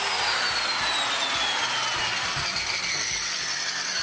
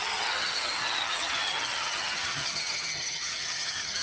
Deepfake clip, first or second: second